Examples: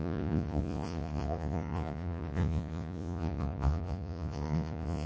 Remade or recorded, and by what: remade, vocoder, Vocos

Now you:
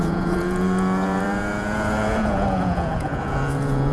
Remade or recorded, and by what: remade, vocoder, Vocos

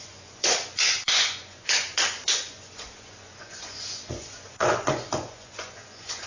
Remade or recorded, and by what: remade, vocoder, Vocos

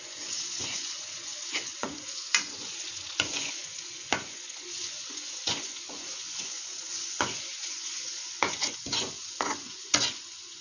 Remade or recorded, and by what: remade, vocoder, Vocos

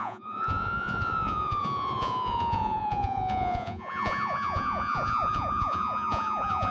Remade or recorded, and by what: remade, vocoder, Vocos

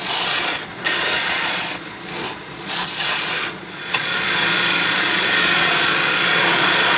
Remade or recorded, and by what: remade, vocoder, Vocos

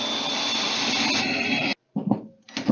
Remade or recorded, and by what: recorded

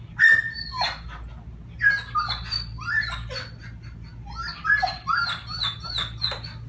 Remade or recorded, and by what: recorded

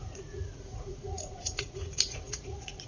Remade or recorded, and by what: remade, vocoder, Vocos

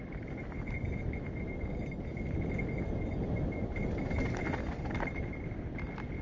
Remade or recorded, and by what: recorded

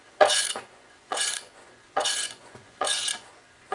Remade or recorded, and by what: remade, vocoder, Vocos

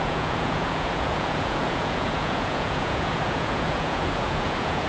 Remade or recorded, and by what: remade, vocoder, Vocos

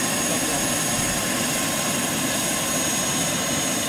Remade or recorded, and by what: recorded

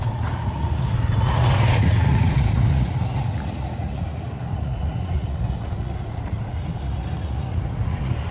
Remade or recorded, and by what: remade, vocoder, Vocos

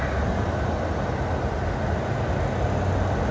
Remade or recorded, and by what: recorded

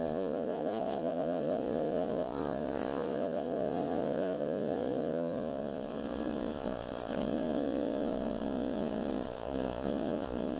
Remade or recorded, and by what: remade, vocoder, Vocos